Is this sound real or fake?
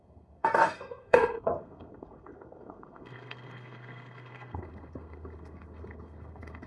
fake